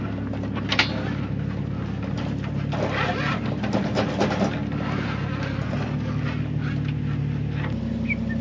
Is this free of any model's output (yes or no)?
yes